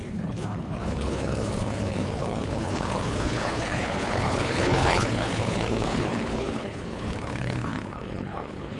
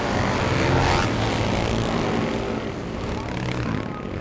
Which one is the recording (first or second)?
second